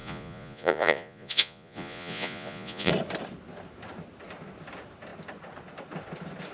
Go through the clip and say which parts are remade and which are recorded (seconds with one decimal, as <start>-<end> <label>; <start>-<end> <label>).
0.0-2.9 remade; 2.9-6.5 recorded